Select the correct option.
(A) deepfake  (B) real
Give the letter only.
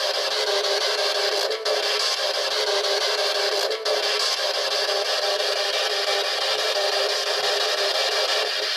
B